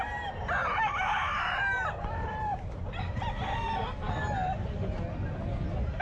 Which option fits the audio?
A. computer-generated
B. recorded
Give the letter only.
B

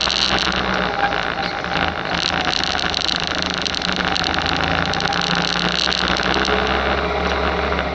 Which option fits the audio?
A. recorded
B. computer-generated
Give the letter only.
A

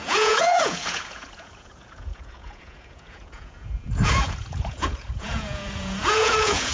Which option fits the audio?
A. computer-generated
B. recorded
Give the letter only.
A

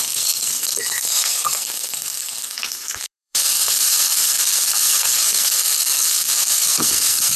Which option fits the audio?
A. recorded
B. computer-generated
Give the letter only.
B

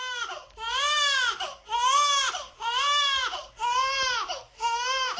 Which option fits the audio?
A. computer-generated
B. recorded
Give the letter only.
B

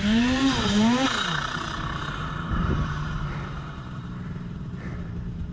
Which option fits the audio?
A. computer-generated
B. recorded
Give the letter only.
A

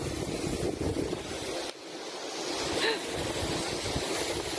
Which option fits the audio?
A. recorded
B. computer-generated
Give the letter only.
A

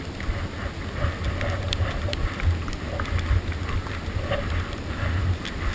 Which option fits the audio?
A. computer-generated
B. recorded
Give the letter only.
B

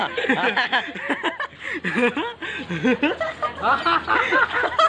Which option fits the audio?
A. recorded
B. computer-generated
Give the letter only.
A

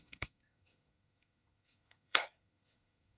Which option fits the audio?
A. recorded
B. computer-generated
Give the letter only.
B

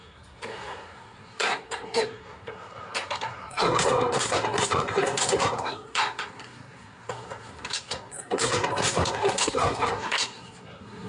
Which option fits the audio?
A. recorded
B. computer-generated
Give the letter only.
B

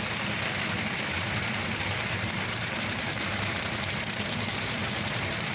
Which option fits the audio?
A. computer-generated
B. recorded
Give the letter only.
A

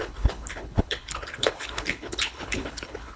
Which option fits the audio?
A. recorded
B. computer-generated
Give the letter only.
B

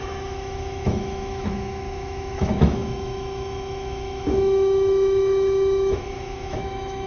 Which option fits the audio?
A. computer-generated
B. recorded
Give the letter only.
A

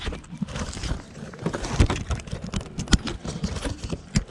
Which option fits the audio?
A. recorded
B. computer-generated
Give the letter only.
B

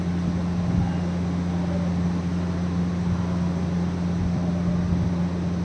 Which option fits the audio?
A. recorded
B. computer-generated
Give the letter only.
A